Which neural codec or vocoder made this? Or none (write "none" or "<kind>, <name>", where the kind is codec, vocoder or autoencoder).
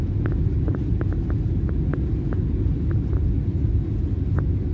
none